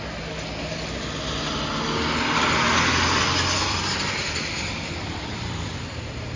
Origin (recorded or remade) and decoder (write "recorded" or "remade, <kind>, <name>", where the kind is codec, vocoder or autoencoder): recorded